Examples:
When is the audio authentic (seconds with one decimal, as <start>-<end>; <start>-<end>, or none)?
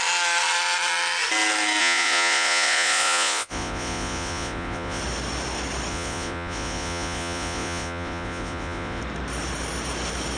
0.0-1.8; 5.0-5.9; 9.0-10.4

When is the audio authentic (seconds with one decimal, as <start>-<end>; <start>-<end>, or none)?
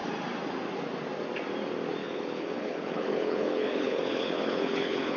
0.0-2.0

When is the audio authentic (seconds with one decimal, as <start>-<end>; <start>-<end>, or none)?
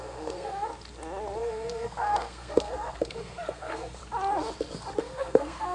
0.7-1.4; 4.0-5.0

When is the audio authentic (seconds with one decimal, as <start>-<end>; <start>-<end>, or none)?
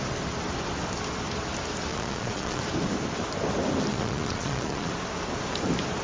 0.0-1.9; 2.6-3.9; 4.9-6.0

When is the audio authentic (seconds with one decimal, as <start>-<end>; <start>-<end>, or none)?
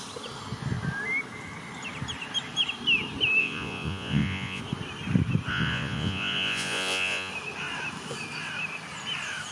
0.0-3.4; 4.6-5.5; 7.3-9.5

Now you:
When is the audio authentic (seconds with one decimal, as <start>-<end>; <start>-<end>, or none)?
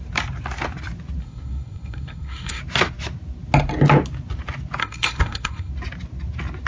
0.0-1.2; 2.6-4.8; 5.7-6.7